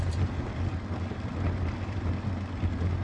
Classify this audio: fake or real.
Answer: real